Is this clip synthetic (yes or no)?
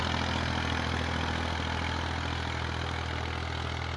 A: no